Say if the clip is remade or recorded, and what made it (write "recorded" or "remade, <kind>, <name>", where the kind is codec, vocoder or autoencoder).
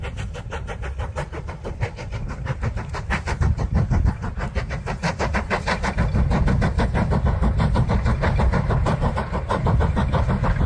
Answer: recorded